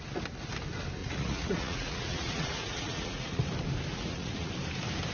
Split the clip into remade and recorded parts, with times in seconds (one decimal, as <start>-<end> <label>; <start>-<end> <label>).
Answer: 0.0-1.0 recorded; 1.0-3.4 remade; 3.4-3.9 recorded; 3.9-4.5 remade; 4.5-5.1 recorded